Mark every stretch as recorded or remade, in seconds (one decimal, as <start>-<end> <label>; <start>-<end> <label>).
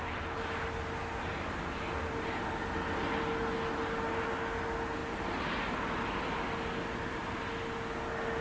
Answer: 0.0-8.4 recorded